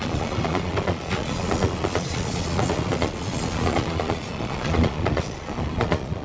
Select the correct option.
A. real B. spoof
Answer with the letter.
B